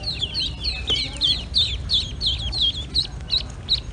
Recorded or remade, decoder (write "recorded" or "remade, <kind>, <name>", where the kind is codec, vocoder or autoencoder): recorded